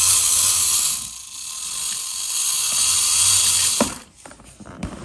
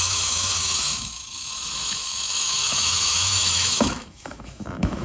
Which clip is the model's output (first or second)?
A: second